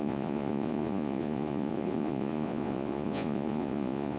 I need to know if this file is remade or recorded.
remade